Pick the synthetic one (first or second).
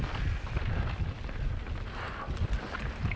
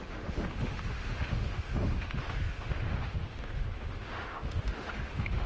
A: second